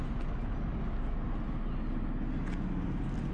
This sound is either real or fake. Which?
real